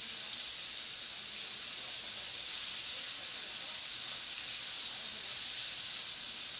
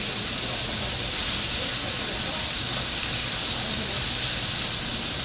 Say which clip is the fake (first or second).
second